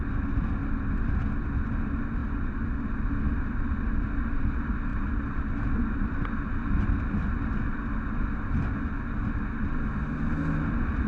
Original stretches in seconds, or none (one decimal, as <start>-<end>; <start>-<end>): 0.0-11.1